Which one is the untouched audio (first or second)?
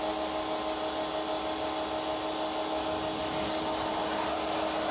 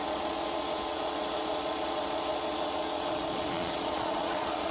first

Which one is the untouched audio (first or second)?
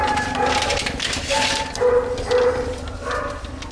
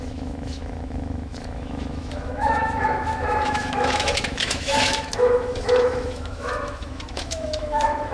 first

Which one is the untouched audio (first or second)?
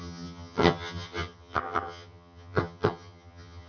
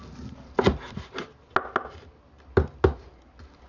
second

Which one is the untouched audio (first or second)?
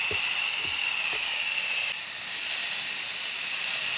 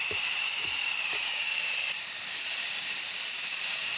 first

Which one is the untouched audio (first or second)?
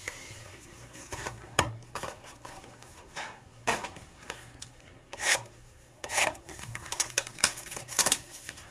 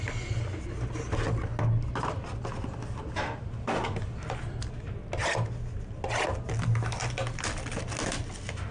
second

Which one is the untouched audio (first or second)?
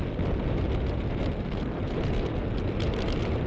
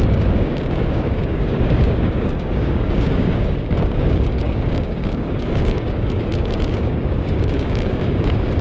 first